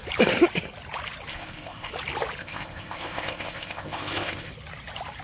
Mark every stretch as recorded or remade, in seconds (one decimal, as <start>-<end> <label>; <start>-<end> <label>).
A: 0.0-1.3 recorded; 1.3-1.9 remade; 1.9-2.4 recorded; 2.4-4.5 remade; 4.5-5.2 recorded